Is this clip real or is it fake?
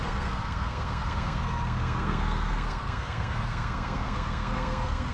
fake